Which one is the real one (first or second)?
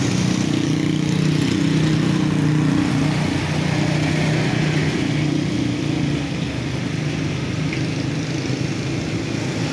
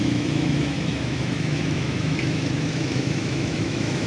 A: first